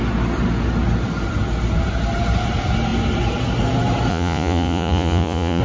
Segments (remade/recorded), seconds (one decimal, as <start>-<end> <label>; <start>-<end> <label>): 0.0-4.1 recorded; 4.1-5.6 remade